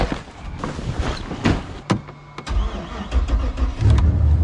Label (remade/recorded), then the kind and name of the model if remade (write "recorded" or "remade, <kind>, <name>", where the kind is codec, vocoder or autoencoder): recorded